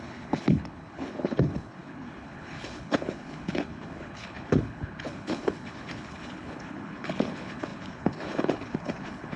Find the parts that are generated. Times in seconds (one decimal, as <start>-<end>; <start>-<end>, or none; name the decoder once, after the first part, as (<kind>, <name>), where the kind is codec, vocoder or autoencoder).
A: 0.0-9.4 (codec, HILCodec)